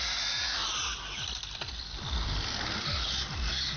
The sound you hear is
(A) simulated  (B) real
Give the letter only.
B